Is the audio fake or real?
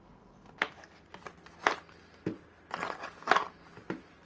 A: real